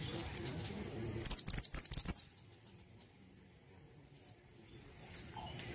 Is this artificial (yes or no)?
yes